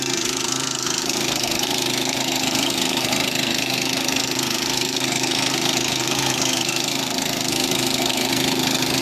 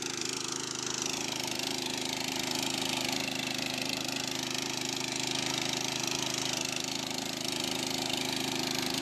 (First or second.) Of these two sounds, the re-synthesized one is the first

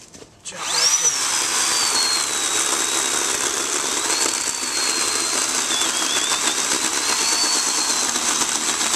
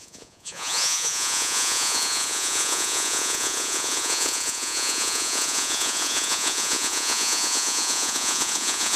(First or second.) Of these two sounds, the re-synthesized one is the second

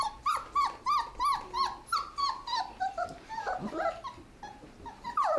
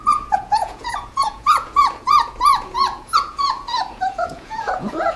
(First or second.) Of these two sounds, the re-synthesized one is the second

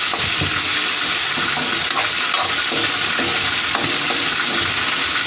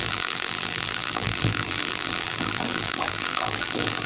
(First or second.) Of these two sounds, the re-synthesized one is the second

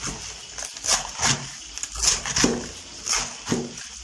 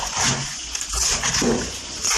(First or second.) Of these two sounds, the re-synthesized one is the second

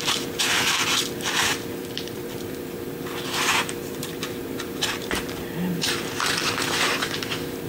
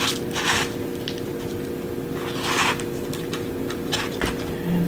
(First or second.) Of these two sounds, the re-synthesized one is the first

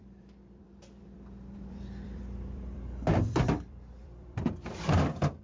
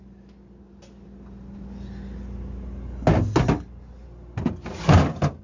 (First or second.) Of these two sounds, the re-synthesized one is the first